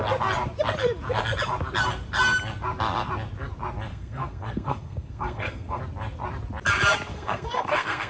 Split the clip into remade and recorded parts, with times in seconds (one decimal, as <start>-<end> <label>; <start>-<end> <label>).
0.0-3.9 recorded; 3.9-5.8 remade; 5.8-7.1 recorded; 7.1-8.1 remade